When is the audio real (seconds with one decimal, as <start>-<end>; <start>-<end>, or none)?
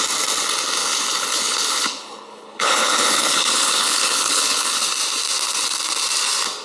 0.0-0.8; 4.8-6.6